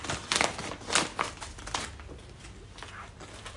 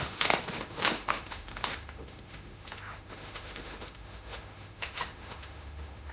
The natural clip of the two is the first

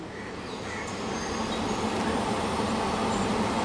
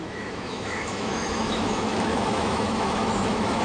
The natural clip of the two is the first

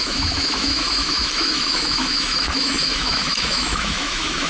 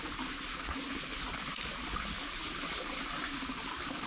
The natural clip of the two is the second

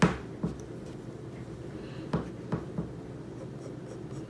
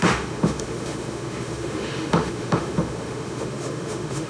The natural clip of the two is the first